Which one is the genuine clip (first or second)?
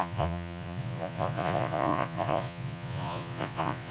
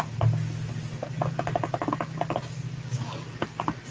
second